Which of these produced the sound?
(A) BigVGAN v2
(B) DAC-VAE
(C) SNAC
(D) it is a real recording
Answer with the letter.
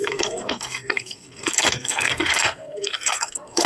C